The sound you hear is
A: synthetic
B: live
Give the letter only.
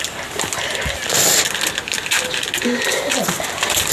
B